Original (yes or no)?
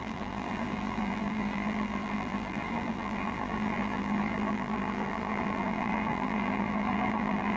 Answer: no